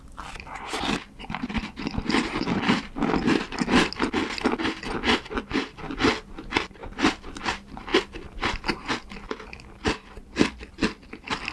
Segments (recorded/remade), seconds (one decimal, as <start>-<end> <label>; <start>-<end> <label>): 0.0-6.8 recorded; 6.8-7.4 remade; 7.4-11.5 recorded